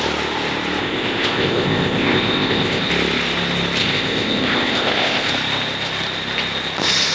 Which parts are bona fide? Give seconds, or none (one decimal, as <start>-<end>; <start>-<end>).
0.0-0.8; 2.9-3.8; 5.3-7.1